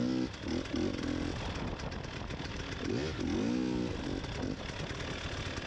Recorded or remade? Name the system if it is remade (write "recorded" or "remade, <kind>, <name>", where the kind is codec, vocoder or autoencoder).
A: recorded